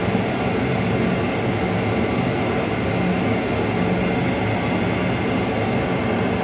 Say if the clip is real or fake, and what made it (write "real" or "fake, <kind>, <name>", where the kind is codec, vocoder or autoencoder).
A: real